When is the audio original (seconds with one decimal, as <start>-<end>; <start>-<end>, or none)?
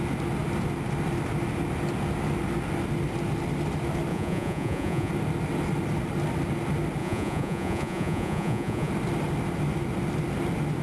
0.0-4.1; 5.1-7.0; 8.9-10.8